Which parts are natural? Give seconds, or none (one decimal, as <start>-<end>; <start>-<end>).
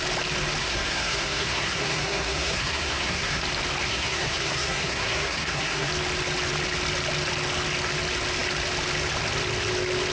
0.0-0.6; 3.4-3.9; 5.9-10.1